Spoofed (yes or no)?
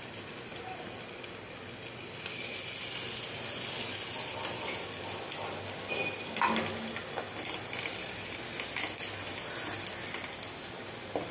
no